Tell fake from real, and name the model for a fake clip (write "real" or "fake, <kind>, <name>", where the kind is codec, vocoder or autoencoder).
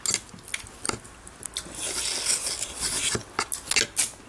real